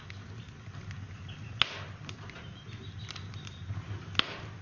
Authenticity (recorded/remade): recorded